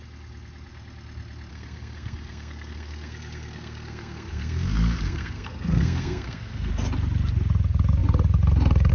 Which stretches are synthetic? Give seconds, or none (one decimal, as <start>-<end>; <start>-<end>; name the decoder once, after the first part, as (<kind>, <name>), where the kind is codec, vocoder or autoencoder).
1.5-6.7 (codec, SNAC)